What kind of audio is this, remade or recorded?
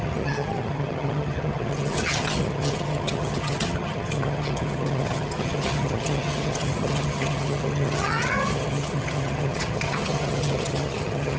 remade